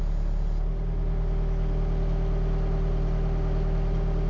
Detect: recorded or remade recorded